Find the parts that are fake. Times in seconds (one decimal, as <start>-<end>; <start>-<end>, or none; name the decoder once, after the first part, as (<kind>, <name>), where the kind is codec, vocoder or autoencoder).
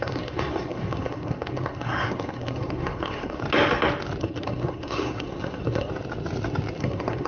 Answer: 0.0-3.4 (codec, SNAC); 4.2-5.9; 6.8-7.3